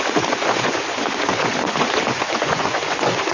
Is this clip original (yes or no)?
no